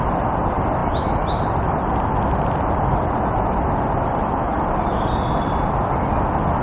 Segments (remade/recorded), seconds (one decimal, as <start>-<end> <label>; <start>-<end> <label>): 0.0-6.6 recorded